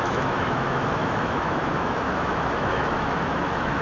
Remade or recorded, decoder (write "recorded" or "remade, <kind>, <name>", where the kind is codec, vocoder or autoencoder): remade, autoencoder, DAC-VAE